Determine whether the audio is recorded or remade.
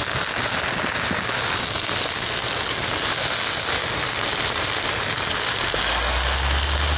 recorded